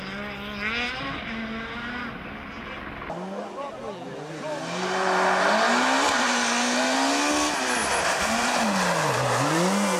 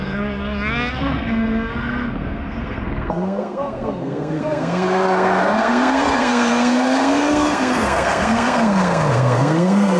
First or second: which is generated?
second